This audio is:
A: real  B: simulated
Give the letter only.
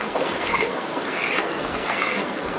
B